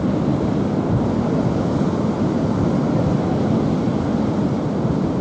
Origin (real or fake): fake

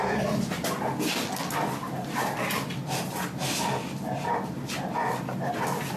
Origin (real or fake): real